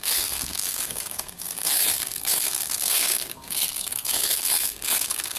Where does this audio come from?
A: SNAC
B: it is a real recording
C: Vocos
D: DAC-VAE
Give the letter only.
A